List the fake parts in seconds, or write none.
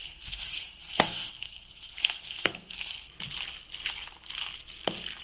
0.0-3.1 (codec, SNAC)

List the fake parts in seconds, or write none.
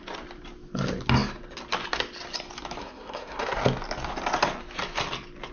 2.8-3.6 (codec, SNAC)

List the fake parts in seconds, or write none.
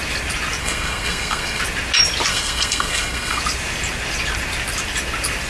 0.6-1.6 (codec, SNAC); 2.3-3.4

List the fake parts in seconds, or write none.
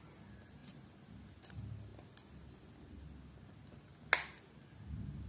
none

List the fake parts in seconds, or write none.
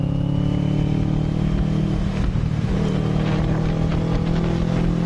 none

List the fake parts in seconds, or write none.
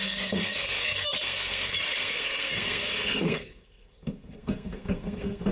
0.0-5.5 (codec, SNAC)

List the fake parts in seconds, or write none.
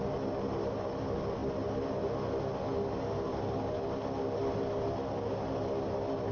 none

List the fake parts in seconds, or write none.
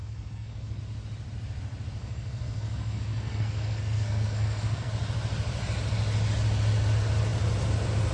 0.0-0.8 (codec, SNAC); 2.0-4.9